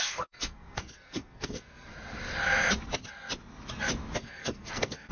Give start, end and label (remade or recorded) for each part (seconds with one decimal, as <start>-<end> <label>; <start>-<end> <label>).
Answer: 0.0-1.9 remade; 1.9-4.2 recorded; 4.2-5.1 remade